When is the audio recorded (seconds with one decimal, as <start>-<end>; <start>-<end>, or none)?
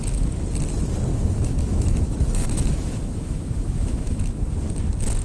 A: 0.0-1.1; 4.2-5.2